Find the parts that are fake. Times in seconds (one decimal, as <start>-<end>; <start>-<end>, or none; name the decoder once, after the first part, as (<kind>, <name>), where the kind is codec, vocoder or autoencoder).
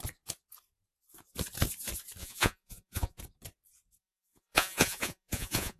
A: 2.2-3.2 (vocoder, Vocos); 4.0-5.8